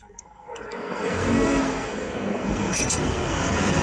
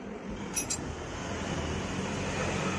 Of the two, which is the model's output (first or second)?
first